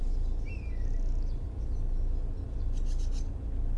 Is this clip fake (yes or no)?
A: no